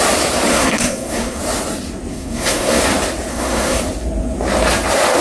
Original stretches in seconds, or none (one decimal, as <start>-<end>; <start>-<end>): 0.0-0.5; 1.4-2.1; 2.8-3.3; 3.8-5.2

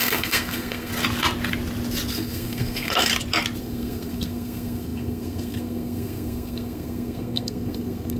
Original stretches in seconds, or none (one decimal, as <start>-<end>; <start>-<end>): 0.9-2.1; 3.1-3.6

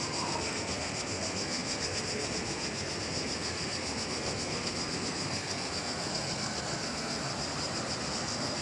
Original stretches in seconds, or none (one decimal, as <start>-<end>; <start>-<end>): 7.3-8.1

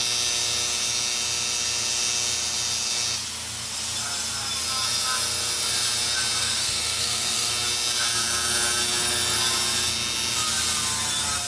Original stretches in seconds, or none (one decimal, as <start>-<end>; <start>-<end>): 0.0-6.4; 7.5-11.5

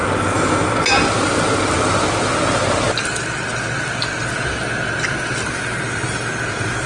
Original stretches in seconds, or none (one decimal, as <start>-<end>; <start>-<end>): 0.0-6.9